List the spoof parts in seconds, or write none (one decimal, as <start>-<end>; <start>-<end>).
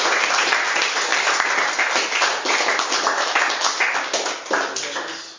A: none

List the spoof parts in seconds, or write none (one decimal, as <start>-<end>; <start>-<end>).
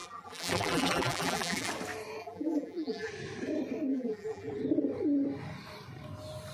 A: 0.0-1.7; 2.2-3.1; 3.9-4.5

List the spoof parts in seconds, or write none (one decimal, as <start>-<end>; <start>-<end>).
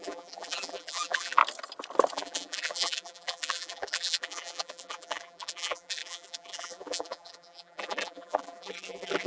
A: 0.0-1.4; 2.1-9.3